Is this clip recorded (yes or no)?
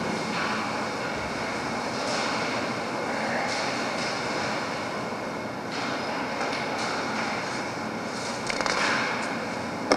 yes